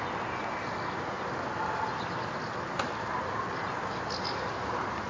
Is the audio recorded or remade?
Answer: recorded